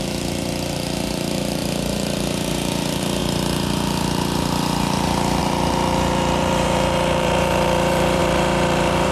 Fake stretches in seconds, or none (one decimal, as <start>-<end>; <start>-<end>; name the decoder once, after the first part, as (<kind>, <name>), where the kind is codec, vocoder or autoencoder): 0.0-9.1 (vocoder, BigVGAN v2)